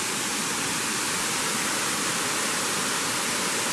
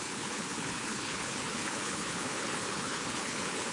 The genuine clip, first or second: first